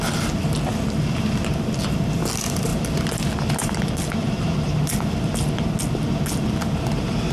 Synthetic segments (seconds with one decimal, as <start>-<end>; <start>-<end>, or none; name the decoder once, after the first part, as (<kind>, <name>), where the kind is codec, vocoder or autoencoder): none

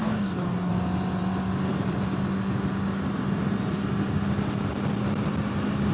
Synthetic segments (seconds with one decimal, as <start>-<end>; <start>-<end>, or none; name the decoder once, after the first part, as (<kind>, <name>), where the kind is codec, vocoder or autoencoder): 0.0-0.7 (codec, DAC)

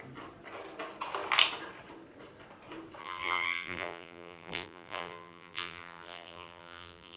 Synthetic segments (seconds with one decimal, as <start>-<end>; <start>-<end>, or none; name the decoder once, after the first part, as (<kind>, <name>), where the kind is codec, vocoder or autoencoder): 3.0-7.2 (vocoder, BigVGAN v2)